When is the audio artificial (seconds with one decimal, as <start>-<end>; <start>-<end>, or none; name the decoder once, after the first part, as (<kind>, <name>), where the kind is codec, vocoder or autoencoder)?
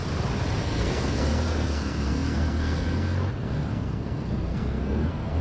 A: 0.6-5.4 (codec, SNAC)